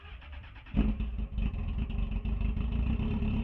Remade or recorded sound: remade